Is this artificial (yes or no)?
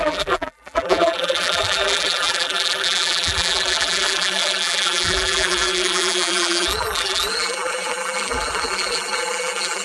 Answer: yes